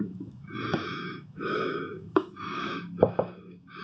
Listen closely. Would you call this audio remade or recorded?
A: remade